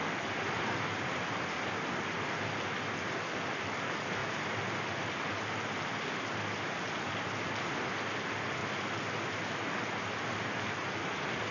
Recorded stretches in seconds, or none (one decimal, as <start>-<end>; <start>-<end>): 0.0-11.5